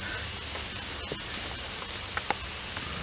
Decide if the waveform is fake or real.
real